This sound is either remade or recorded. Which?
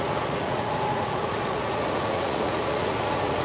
remade